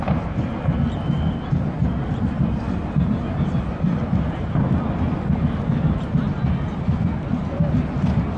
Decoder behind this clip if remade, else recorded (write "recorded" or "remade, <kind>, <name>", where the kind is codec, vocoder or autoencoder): recorded